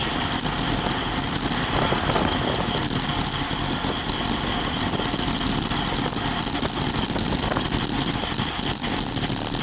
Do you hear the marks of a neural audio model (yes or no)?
no